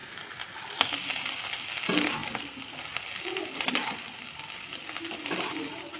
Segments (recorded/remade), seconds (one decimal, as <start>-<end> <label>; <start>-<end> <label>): 0.0-6.0 recorded